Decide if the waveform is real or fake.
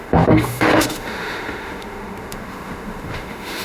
fake